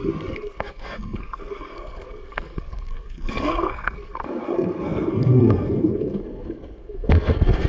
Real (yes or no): no